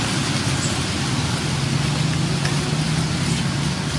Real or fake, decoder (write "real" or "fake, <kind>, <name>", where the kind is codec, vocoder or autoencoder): real